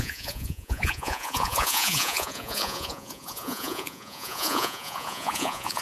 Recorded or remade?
remade